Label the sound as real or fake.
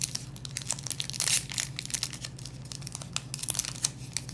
real